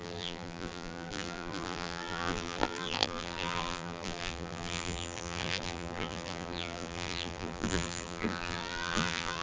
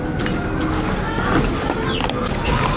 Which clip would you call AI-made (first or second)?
first